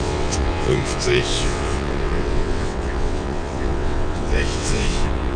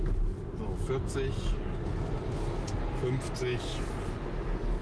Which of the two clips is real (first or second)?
second